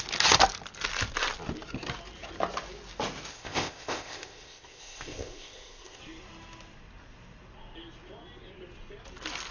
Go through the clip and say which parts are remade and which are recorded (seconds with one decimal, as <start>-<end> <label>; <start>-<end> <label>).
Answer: 0.0-3.3 recorded; 3.3-6.0 remade; 6.0-9.5 recorded